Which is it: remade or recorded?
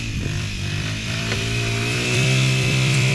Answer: remade